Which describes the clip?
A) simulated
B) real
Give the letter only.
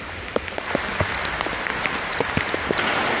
B